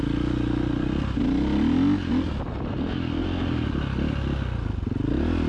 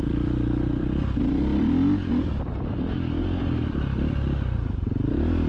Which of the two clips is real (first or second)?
first